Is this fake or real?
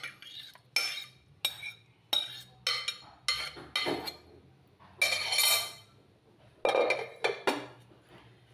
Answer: real